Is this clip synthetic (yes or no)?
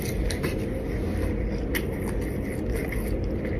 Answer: no